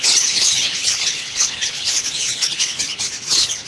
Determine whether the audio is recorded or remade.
remade